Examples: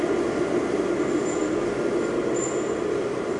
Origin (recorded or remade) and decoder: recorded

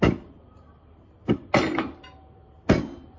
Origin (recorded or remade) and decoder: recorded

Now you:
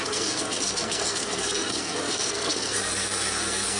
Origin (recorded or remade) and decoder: remade, codec, SNAC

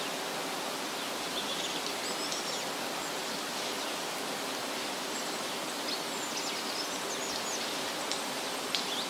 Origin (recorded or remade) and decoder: recorded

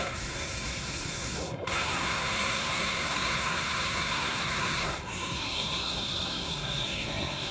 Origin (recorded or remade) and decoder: remade, codec, SNAC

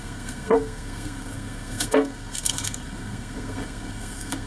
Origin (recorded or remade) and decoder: remade, codec, SNAC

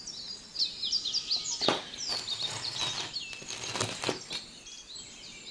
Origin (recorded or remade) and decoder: recorded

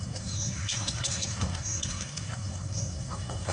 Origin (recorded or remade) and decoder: remade, codec, SNAC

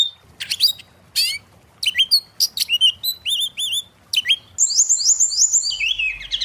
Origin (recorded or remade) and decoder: recorded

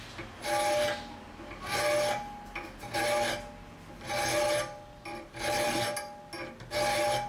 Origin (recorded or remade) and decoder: recorded